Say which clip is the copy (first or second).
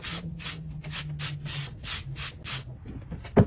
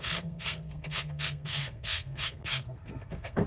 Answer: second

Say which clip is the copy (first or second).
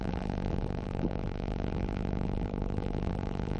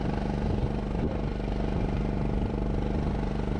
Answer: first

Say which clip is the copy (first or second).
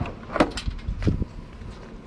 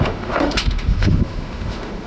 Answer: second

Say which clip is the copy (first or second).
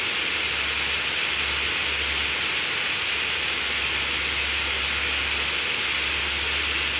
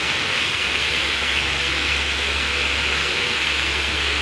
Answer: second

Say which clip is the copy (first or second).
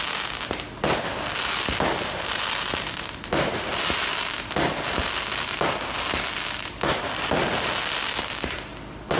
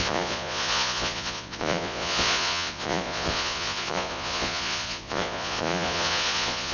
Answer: second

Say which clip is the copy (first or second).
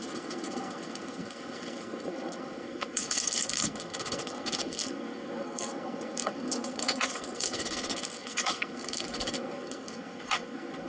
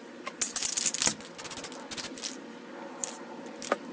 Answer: first